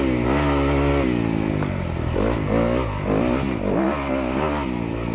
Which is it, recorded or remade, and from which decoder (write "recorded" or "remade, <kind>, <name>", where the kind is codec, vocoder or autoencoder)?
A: recorded